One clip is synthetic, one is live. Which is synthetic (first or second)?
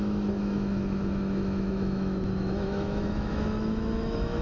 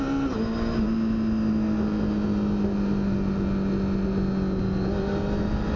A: first